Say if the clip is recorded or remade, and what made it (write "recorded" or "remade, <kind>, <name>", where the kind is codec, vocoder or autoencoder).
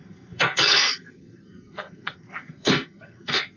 remade, codec, SNAC